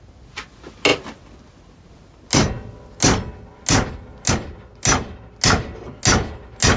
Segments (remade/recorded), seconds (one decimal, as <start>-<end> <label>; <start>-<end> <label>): 0.0-6.8 recorded